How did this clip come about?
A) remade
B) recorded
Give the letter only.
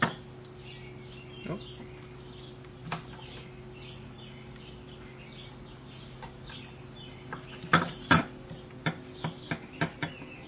B